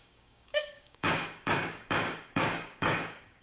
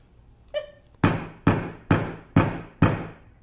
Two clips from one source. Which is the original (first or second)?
second